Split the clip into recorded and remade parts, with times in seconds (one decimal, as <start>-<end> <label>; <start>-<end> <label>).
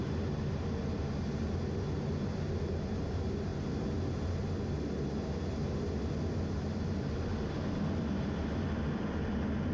0.0-9.7 recorded